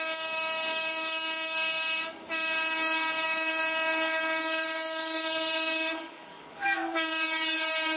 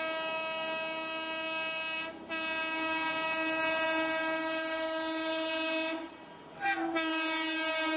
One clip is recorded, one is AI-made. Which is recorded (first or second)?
second